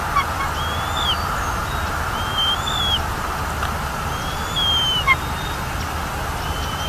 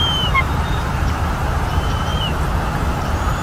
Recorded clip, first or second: first